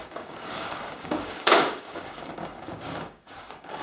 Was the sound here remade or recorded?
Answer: remade